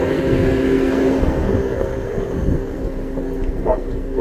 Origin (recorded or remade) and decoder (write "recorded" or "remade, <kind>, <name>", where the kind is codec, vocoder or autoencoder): remade, codec, SNAC